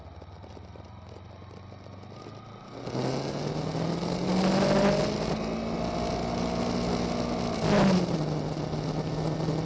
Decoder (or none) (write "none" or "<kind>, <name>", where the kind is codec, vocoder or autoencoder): none